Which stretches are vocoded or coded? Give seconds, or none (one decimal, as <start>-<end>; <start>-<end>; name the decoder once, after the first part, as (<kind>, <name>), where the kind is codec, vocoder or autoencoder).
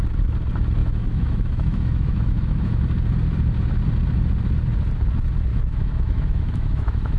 0.8-2.8 (autoencoder, DAC-VAE); 5.5-7.2